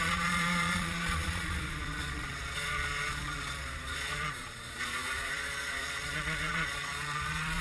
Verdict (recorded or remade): remade